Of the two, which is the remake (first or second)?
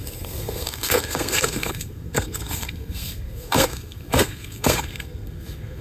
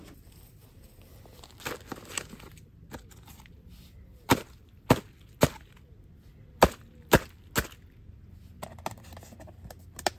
first